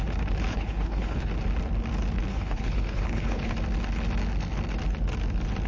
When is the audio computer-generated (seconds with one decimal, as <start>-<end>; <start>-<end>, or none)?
0.5-1.3; 2.3-3.5